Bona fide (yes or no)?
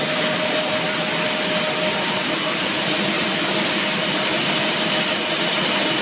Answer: yes